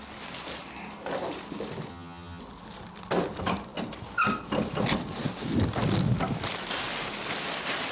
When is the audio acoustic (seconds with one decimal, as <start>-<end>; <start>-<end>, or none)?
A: 0.0-1.9; 2.4-7.9